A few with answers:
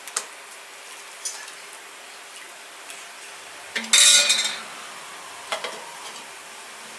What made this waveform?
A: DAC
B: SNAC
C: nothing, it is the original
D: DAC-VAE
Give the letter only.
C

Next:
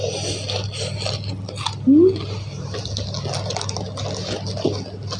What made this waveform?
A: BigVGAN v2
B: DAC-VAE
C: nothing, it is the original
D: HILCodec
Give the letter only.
C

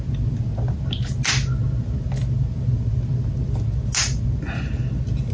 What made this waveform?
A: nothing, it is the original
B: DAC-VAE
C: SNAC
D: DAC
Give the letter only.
A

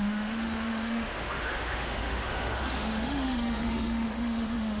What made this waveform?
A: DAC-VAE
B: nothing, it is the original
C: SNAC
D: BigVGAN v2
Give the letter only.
A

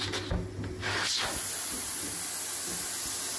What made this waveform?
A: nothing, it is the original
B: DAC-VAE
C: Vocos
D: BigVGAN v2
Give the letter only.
A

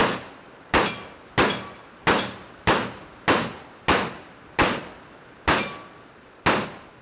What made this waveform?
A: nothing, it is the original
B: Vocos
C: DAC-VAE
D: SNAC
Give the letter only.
A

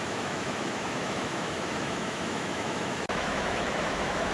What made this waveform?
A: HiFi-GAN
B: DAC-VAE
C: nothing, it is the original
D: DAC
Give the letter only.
B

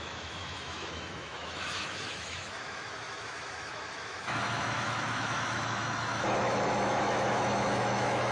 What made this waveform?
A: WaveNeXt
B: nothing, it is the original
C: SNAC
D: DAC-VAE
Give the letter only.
D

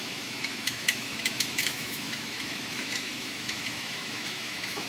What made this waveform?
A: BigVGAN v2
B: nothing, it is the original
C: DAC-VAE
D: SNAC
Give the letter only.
C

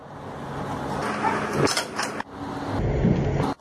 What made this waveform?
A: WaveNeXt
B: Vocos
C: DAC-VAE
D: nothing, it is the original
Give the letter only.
D